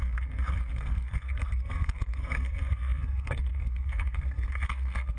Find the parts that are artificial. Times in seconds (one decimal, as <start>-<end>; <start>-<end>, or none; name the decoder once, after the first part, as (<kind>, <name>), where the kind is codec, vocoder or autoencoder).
0.0-5.2 (codec, SNAC)